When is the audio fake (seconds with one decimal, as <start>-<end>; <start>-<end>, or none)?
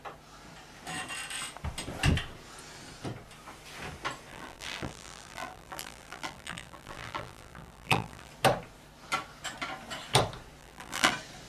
4.3-8.3; 10.6-11.1